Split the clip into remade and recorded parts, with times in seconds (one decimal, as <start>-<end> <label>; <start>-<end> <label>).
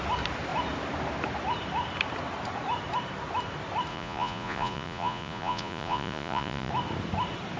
0.0-3.9 recorded; 3.9-6.7 remade; 6.7-7.6 recorded